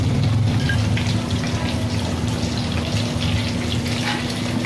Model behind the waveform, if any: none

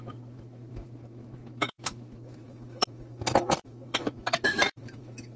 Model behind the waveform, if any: autoencoder, DAC-VAE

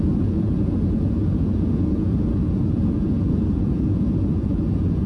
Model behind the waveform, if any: vocoder, Vocos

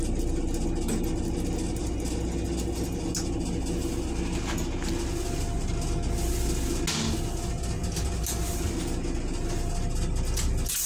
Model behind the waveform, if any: none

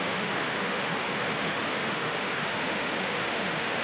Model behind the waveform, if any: autoencoder, DAC-VAE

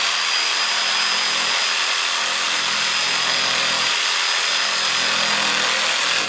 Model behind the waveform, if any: none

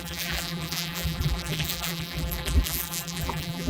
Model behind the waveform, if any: vocoder, BigVGAN v2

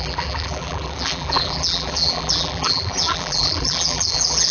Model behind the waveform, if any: vocoder, BigVGAN v2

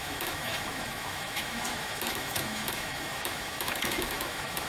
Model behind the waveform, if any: autoencoder, DAC-VAE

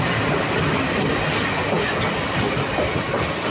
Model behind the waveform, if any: none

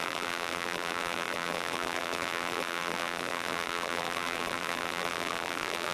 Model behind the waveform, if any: vocoder, BigVGAN v2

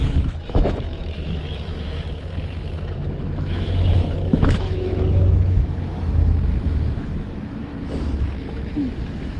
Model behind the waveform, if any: autoencoder, DAC-VAE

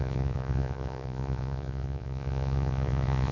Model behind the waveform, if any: vocoder, Vocos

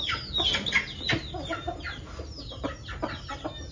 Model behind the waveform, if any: none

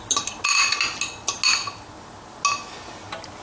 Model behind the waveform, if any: none